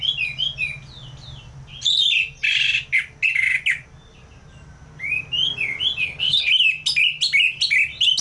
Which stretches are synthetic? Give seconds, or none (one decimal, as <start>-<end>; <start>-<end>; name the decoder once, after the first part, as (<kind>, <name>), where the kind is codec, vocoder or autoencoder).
6.0-6.5 (codec, HILCodec)